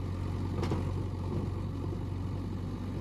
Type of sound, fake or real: real